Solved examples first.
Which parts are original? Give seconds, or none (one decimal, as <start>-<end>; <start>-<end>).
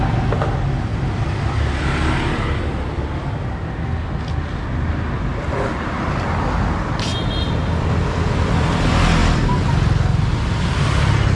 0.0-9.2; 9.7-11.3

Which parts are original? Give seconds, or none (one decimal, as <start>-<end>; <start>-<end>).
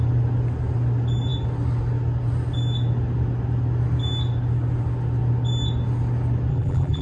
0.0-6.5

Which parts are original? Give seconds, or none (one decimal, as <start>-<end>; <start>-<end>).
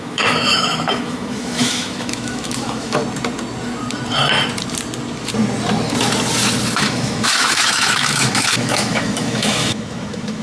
3.0-6.8